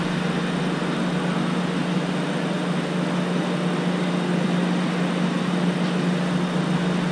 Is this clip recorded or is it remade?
recorded